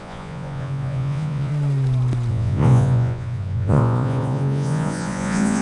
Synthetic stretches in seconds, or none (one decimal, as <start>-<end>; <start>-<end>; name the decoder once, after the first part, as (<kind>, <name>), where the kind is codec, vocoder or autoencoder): 0.0-1.5 (vocoder, Vocos); 2.3-5.6